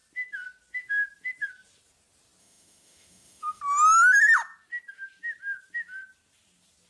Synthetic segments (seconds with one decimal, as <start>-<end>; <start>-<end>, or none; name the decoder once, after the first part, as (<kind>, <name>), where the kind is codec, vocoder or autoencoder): 2.4-3.6 (autoencoder, DAC-VAE)

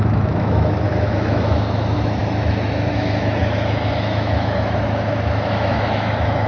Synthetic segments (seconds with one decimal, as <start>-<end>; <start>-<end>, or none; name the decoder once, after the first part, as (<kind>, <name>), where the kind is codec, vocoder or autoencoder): 0.0-6.5 (autoencoder, DAC-VAE)